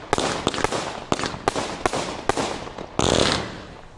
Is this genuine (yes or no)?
yes